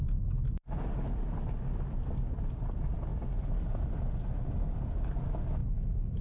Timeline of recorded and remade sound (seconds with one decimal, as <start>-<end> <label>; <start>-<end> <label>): 0.0-6.2 recorded